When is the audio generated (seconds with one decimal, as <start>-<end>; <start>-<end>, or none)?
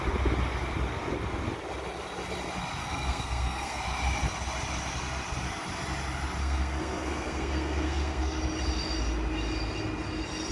2.8-3.8; 6.4-8.4